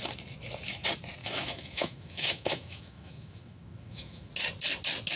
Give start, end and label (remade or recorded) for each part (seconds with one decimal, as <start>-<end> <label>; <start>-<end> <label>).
0.0-1.2 recorded; 1.2-4.3 remade; 4.3-5.2 recorded